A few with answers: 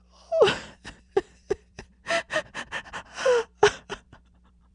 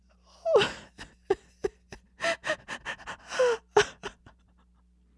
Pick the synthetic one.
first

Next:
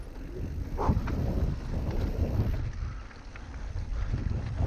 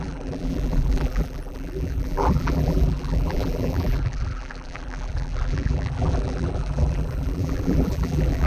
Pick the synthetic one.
second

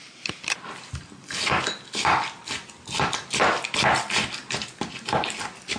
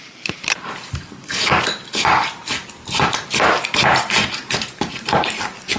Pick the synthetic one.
second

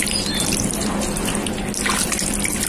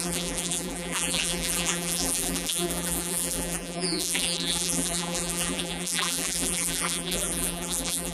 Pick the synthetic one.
second